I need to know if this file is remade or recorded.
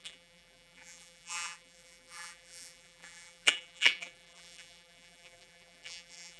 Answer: remade